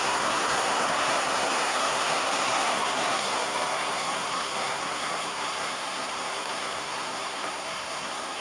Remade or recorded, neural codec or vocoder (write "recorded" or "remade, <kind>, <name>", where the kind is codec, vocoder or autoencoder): remade, codec, SNAC